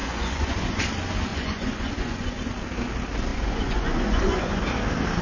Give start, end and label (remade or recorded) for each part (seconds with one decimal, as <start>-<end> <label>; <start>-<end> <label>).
0.0-0.8 remade; 0.8-1.3 recorded; 1.3-2.5 remade; 2.5-3.3 recorded; 3.3-4.6 remade; 4.6-5.2 recorded